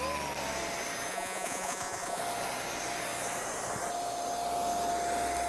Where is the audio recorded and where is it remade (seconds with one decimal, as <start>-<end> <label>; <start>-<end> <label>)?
0.0-1.1 recorded; 1.1-2.2 remade; 2.2-5.5 recorded